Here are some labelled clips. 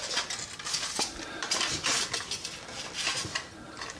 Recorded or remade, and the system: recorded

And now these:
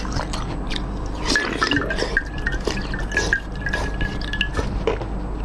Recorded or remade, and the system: recorded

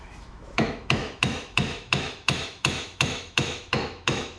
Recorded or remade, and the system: remade, autoencoder, DAC-VAE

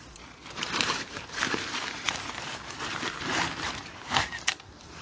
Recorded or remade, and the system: remade, vocoder, BigVGAN v2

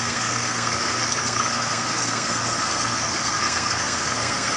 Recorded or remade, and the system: remade, codec, SNAC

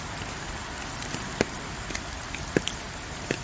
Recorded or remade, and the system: remade, vocoder, BigVGAN v2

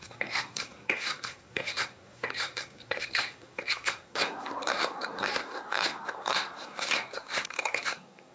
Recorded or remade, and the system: remade, codec, SNAC